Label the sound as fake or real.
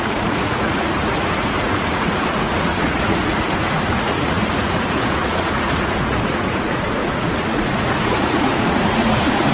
fake